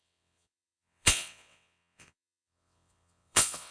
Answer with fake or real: fake